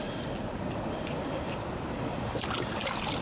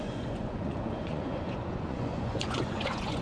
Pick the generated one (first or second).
second